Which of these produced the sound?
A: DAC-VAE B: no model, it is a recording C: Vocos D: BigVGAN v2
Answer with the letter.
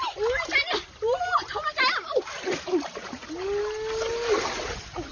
B